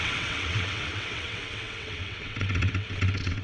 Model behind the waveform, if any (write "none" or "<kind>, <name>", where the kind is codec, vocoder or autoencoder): vocoder, WaveNeXt